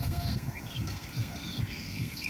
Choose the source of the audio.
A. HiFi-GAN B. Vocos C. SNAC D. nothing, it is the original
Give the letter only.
C